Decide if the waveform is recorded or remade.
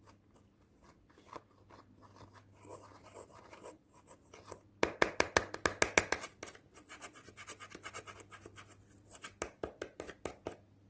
recorded